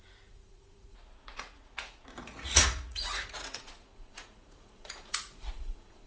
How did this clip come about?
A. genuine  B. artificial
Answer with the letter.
B